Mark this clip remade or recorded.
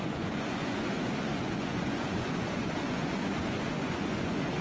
remade